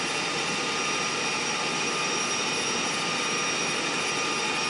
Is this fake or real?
real